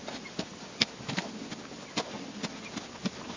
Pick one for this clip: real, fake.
real